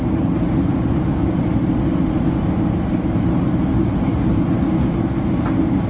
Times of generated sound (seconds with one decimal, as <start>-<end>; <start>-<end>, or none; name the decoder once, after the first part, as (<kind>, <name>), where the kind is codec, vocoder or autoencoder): none